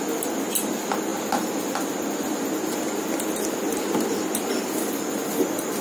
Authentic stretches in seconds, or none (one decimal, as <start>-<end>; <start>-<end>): 0.0-5.8